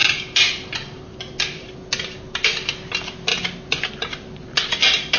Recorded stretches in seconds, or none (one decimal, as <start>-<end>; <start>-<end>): 0.0-5.2